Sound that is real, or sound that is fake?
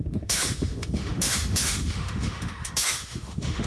fake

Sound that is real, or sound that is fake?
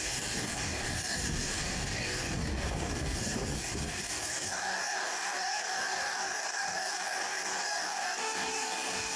fake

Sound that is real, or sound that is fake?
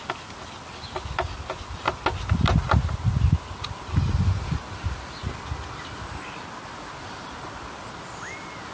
real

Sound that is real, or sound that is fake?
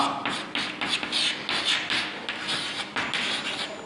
real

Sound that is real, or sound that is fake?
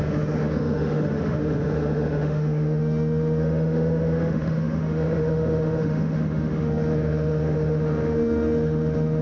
fake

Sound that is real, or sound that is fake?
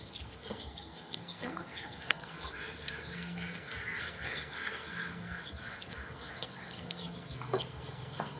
fake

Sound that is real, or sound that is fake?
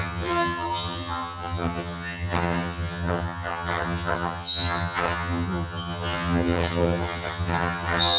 fake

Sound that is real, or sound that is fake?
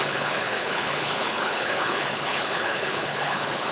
fake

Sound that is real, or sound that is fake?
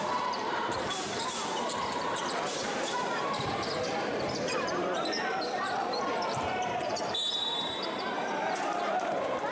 fake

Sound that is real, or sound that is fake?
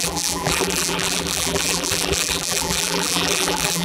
fake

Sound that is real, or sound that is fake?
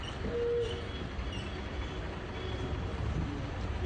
real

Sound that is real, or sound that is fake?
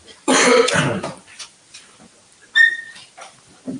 real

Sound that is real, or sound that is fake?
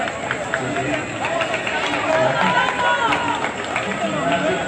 real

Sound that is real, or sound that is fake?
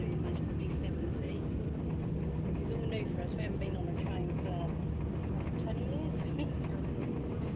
real